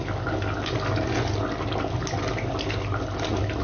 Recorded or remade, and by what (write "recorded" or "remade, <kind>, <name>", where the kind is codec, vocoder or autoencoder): recorded